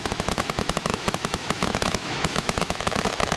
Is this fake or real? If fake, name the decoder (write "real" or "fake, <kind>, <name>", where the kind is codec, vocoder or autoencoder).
fake, autoencoder, DAC-VAE